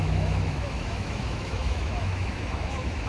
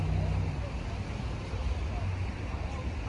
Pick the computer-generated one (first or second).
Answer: first